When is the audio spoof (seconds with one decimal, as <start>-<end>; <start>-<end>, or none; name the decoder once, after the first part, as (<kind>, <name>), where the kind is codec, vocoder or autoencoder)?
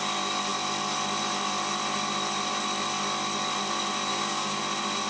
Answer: 4.1-4.6 (codec, DAC)